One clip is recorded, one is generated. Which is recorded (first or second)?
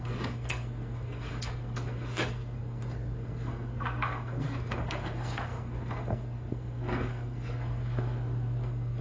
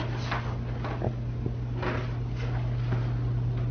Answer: second